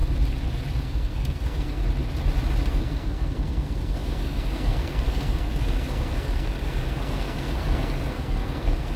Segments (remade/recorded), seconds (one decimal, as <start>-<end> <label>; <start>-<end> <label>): 0.0-0.8 recorded; 0.8-1.8 remade; 1.8-2.7 recorded; 2.7-9.0 remade